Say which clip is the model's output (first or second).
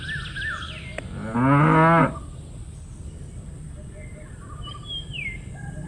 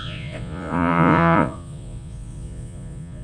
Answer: second